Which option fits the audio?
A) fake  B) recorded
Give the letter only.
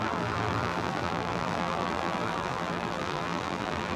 A